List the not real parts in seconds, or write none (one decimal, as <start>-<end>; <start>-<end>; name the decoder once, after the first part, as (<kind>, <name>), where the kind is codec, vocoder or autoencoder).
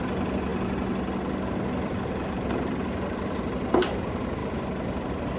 none